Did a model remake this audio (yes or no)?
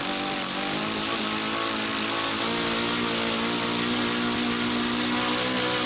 no